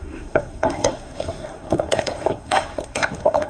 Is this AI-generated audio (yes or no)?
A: yes